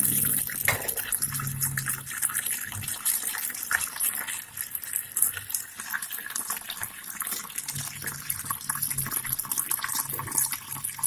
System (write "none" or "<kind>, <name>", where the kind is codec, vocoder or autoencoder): none